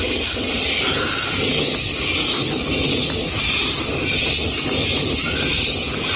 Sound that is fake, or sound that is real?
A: real